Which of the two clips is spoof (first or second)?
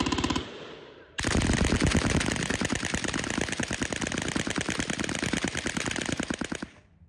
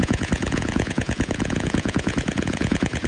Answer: second